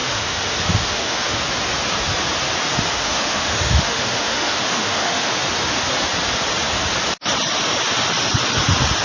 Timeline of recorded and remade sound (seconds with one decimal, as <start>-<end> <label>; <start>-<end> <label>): 0.0-1.4 remade; 1.4-2.9 recorded; 2.9-5.3 remade; 5.3-9.0 recorded